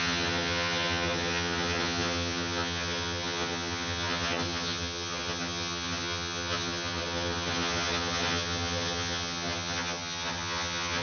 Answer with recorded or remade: remade